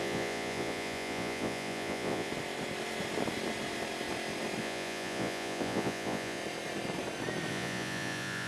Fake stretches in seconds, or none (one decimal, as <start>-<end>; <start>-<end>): 0.0-2.3; 4.6-6.4; 7.5-8.5